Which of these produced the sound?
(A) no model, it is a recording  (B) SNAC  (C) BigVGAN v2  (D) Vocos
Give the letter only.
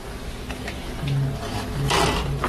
A